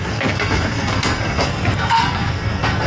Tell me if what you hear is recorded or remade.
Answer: remade